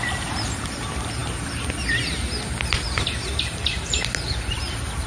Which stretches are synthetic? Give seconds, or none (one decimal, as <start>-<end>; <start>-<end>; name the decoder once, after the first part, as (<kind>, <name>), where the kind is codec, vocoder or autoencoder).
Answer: none